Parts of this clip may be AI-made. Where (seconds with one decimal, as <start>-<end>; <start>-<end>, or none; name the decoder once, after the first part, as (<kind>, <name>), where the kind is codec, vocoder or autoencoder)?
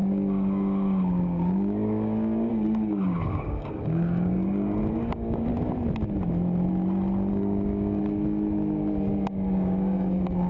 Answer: 0.0-5.5 (codec, DAC); 7.3-8.0; 9.3-10.5